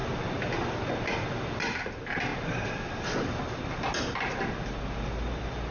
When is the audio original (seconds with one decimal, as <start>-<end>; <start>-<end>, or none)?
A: 0.0-5.7